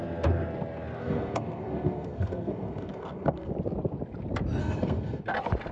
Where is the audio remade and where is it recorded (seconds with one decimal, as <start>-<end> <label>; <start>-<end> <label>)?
0.0-1.0 recorded; 1.0-3.5 remade; 3.5-4.6 recorded; 4.6-5.2 remade; 5.2-5.7 recorded